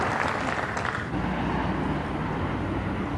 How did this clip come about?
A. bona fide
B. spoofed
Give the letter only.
A